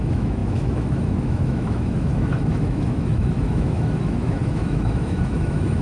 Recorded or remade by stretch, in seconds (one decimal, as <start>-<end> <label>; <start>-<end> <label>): 0.0-5.8 remade